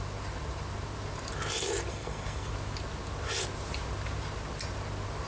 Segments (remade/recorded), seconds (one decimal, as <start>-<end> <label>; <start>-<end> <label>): 0.0-1.9 recorded; 1.9-2.5 remade; 2.5-5.3 recorded